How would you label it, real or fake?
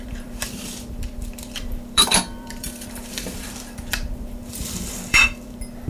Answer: fake